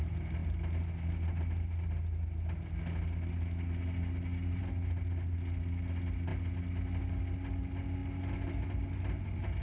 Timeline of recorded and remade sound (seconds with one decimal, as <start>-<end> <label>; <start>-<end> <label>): 0.0-9.6 recorded